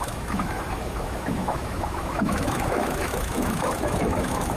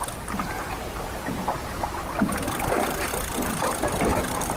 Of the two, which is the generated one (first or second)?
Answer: first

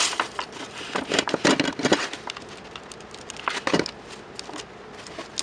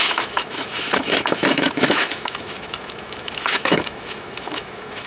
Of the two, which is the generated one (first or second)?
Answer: second